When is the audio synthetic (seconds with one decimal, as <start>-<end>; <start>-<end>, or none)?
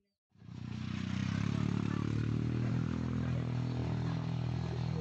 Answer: none